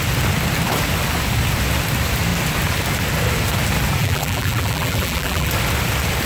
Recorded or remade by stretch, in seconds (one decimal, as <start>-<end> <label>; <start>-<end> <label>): 0.0-4.0 recorded; 4.0-5.5 remade; 5.5-6.3 recorded